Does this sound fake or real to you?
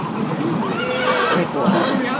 real